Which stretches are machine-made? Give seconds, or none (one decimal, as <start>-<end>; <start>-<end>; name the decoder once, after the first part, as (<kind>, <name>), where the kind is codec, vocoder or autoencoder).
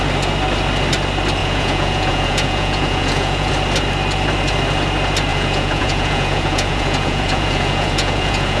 1.4-3.5 (vocoder, Vocos); 5.3-8.6